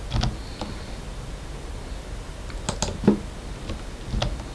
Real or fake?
real